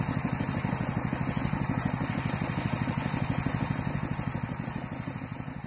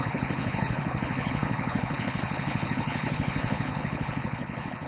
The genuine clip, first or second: first